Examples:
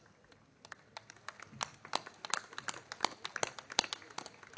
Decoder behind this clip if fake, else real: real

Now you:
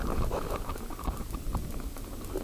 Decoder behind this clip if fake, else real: real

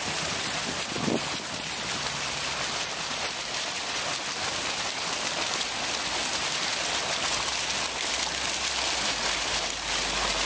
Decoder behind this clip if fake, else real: real